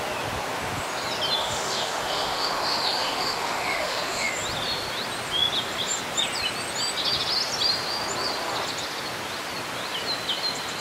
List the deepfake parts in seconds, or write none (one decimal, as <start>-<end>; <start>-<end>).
1.4-4.3